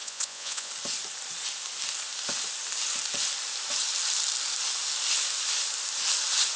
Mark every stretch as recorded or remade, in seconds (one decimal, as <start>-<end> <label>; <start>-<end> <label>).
0.0-0.7 remade; 0.7-6.6 recorded